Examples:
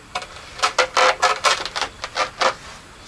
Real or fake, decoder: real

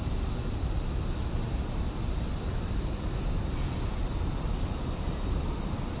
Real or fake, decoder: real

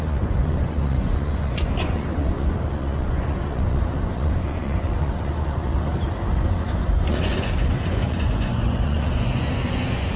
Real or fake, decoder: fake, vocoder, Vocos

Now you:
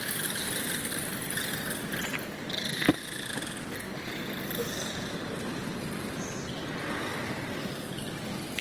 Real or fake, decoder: real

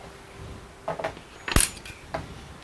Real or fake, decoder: real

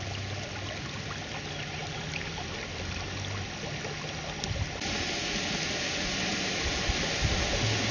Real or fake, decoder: real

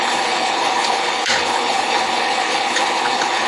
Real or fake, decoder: fake, codec, HILCodec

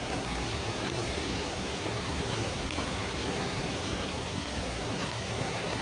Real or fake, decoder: fake, codec, SNAC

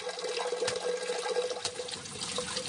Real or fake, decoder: real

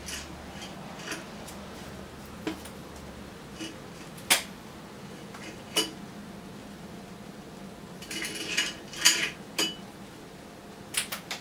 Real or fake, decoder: real